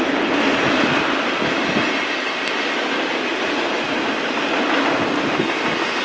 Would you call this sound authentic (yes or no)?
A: yes